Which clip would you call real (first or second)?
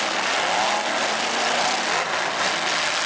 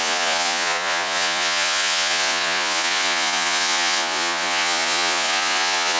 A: first